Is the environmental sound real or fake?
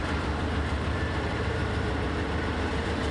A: fake